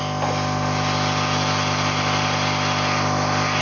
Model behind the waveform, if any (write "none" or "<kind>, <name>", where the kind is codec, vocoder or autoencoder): none